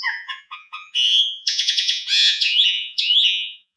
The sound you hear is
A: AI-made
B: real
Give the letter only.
A